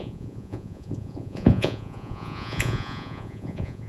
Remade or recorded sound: remade